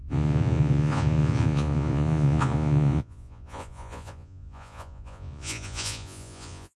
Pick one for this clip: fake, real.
fake